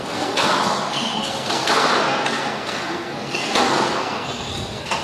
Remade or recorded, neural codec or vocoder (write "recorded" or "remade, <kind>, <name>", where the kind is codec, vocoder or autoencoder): remade, codec, SNAC